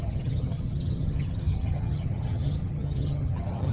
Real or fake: fake